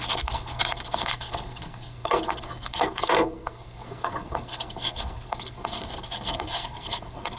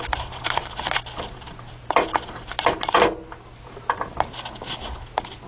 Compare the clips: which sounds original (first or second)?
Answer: second